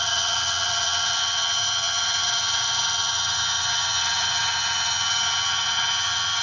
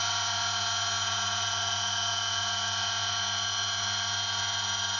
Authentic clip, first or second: second